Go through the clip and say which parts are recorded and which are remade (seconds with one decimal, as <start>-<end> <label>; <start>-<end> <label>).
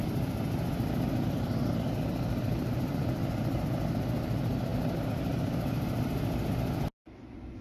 0.0-7.6 recorded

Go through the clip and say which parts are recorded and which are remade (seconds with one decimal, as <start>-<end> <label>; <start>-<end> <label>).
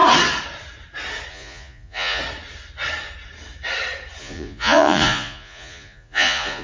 0.0-1.3 recorded; 1.3-2.2 remade; 2.2-4.2 recorded; 4.2-6.6 remade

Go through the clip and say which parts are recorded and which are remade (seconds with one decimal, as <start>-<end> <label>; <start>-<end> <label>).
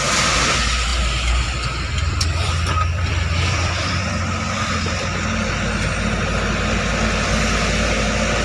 0.0-0.9 recorded; 0.9-5.5 remade; 5.5-8.4 recorded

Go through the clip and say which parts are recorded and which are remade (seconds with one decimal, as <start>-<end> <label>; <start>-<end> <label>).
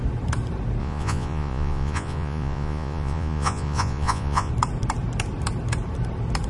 0.0-0.8 recorded; 0.8-4.5 remade; 4.5-6.5 recorded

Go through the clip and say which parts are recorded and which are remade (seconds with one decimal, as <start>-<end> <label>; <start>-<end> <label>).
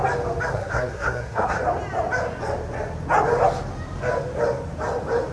0.0-0.5 recorded; 0.5-1.6 remade; 1.6-5.3 recorded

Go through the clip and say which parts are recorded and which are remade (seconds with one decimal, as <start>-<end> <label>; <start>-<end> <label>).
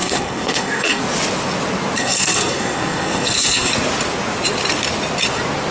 0.0-1.0 remade; 1.0-2.0 recorded; 2.0-3.7 remade; 3.7-5.7 recorded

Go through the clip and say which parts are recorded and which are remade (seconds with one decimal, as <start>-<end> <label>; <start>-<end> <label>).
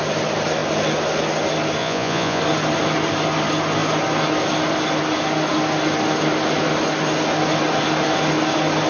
0.0-1.8 recorded; 1.8-2.4 remade; 2.4-8.9 recorded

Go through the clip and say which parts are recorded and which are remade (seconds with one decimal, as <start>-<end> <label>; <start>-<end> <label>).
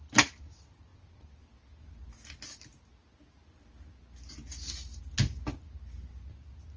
0.0-6.8 recorded